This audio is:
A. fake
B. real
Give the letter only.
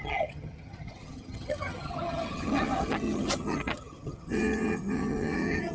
A